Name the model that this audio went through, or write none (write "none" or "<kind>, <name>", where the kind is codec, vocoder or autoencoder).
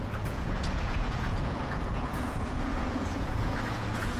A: vocoder, Vocos